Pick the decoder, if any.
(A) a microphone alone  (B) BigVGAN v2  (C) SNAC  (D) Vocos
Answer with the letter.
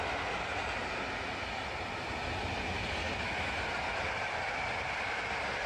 A